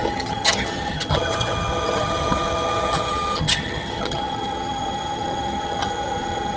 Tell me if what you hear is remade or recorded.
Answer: remade